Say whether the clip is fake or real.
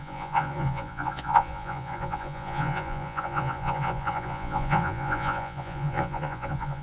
fake